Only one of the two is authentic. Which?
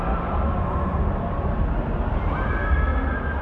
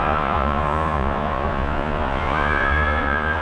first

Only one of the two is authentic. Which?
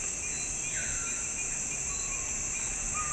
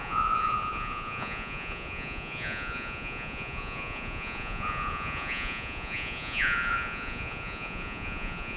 first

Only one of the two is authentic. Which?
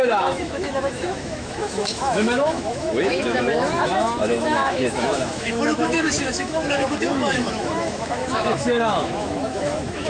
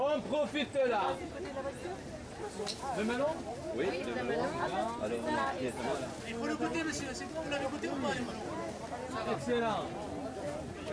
second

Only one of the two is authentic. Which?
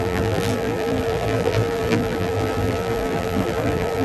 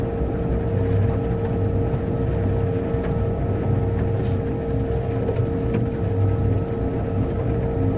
second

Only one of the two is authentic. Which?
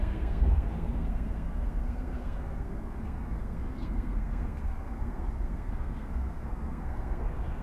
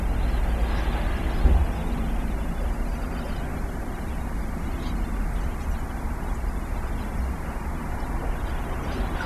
second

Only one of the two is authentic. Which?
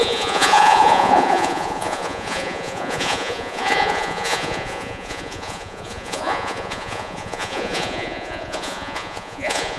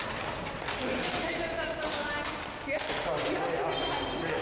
second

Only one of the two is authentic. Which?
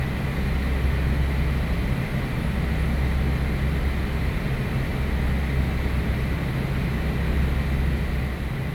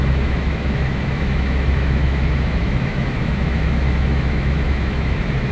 first